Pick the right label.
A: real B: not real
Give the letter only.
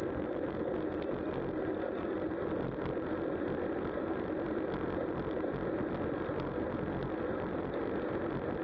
A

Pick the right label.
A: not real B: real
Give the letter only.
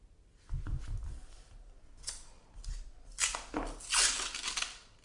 B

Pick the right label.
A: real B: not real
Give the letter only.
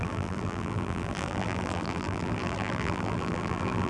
B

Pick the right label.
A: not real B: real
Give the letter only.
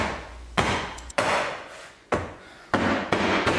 A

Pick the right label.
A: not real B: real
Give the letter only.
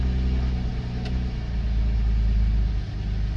B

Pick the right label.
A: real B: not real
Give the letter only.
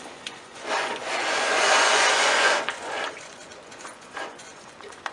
B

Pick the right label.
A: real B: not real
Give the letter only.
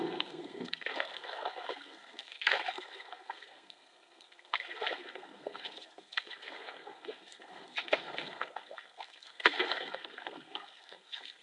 B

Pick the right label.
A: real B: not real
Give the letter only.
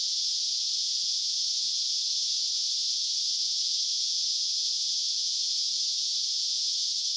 B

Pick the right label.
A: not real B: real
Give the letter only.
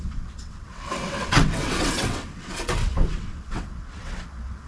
A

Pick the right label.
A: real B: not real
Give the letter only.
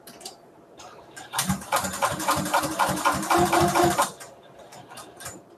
B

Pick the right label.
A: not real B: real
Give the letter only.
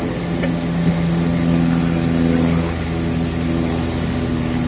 B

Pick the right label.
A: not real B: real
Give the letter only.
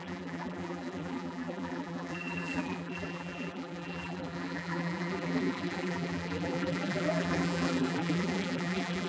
A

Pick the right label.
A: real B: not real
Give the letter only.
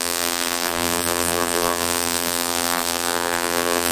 B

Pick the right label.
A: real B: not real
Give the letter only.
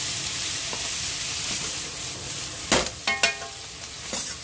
A